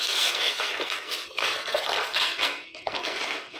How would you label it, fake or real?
fake